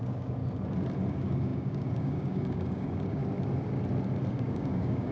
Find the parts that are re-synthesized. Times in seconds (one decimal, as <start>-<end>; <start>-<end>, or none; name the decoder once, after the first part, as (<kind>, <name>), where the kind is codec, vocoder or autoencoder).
0.0-0.4 (codec, DAC); 1.1-3.2; 4.3-5.1